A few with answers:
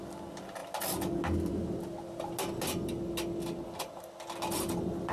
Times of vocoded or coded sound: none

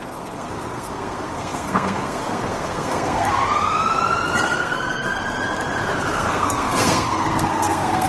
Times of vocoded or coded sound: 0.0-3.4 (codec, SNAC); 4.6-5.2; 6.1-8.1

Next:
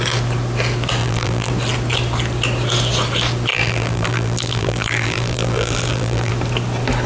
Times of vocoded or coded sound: 1.0-1.5 (vocoder, BigVGAN v2); 3.5-6.3

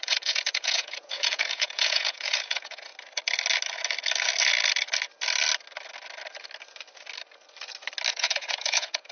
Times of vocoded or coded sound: 0.0-2.9 (vocoder, Vocos); 8.1-9.1

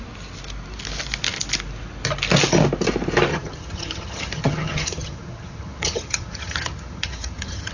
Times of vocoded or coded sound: 3.3-7.7 (vocoder, HiFi-GAN)

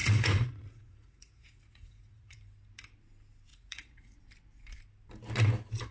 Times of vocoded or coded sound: 0.0-2.4 (vocoder, Vocos); 3.5-4.2

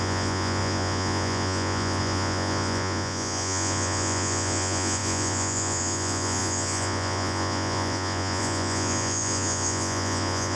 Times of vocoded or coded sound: 0.0-10.6 (vocoder, Vocos)